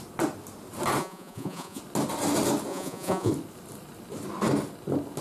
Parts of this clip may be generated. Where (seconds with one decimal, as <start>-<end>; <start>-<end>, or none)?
1.0-1.8; 2.7-3.3